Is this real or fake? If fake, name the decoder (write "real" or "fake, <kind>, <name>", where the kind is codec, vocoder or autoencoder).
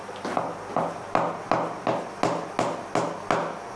real